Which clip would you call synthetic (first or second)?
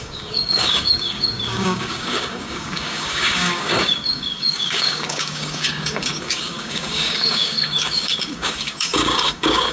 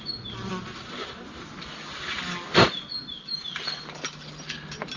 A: first